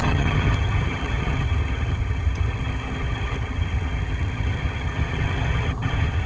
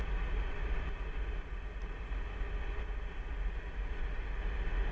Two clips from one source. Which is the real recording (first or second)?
second